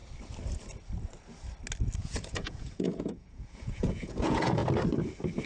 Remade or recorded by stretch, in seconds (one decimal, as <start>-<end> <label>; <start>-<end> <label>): 0.0-2.0 recorded; 2.0-4.6 remade; 4.6-5.5 recorded